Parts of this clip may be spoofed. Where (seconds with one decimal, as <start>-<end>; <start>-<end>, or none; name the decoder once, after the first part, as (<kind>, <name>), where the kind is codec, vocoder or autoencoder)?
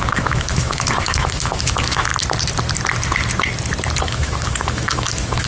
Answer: 0.0-2.1 (autoencoder, DAC-VAE); 4.0-5.5